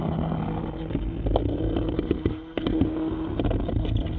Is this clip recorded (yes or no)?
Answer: yes